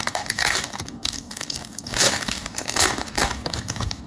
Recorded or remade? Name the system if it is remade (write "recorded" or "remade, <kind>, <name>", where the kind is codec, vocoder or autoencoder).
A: remade, codec, DAC